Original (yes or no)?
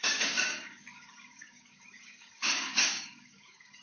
no